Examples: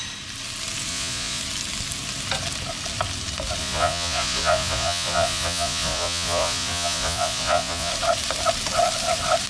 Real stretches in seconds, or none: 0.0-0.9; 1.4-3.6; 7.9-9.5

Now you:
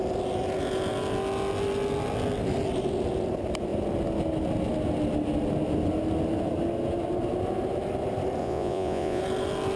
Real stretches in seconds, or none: 0.0-8.4; 9.2-9.8

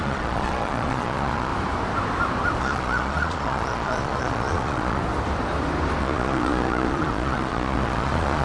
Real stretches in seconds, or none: 1.5-2.6; 5.0-6.0

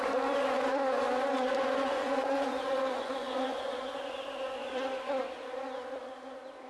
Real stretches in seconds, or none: 0.0-1.5; 3.8-4.6; 5.2-6.7

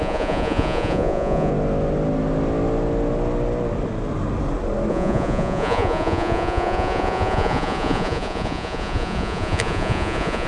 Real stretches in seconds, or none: 1.5-4.9